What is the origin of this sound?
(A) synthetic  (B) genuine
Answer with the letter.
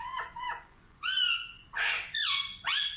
A